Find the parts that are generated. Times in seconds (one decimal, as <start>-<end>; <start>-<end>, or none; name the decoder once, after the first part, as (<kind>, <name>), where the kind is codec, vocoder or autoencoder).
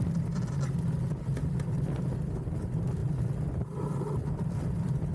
none